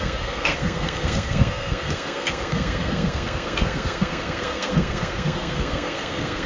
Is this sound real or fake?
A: fake